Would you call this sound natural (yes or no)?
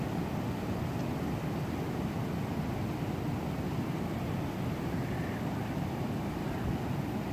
yes